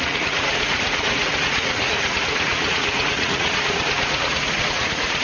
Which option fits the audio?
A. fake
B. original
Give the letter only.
A